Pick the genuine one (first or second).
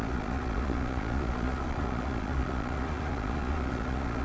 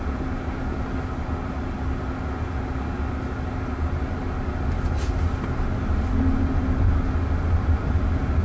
second